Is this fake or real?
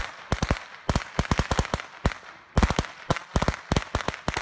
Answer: real